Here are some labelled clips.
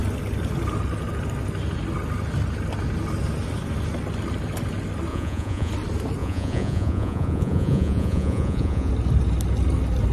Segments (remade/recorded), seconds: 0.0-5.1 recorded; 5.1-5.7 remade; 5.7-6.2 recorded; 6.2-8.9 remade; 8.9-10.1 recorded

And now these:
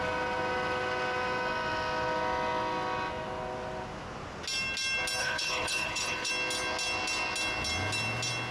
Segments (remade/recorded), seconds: 0.0-5.2 recorded; 5.2-6.3 remade; 6.3-8.5 recorded

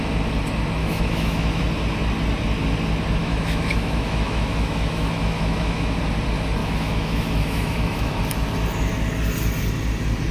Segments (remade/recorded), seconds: 0.0-0.8 recorded; 0.8-1.6 remade; 1.6-3.2 recorded; 3.2-6.0 remade; 6.0-6.6 recorded; 6.6-8.2 remade; 8.2-10.3 recorded